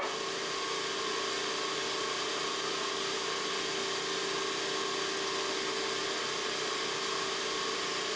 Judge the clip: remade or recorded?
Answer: recorded